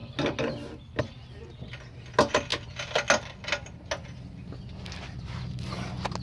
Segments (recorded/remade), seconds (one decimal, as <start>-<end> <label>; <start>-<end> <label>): 0.0-6.2 recorded